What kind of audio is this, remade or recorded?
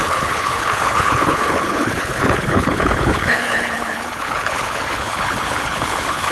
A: remade